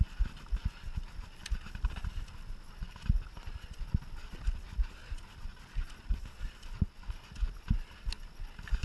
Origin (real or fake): real